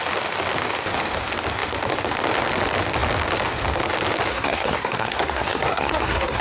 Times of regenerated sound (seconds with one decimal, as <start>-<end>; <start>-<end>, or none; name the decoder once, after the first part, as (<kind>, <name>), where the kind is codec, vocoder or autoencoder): 4.3-6.4 (codec, SNAC)